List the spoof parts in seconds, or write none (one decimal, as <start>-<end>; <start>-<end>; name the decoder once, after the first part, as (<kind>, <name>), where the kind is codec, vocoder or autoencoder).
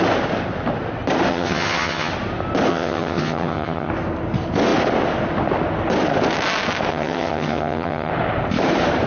1.3-2.1 (vocoder, HiFi-GAN); 2.7-3.9; 6.9-8.1